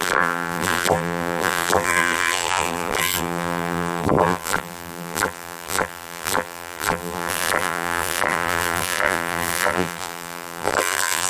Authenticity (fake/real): fake